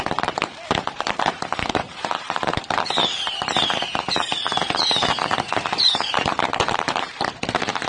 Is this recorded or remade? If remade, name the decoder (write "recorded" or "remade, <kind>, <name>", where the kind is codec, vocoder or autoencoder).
remade, vocoder, BigVGAN v2